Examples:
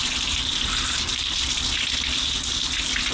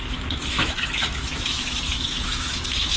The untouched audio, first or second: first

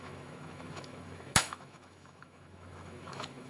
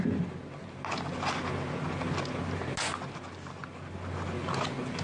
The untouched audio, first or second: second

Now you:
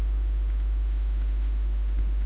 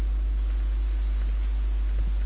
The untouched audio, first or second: second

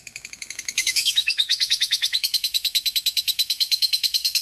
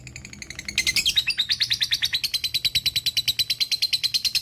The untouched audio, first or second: second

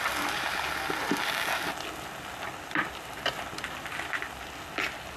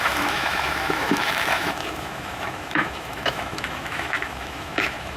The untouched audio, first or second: first